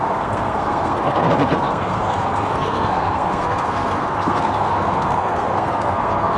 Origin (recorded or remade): remade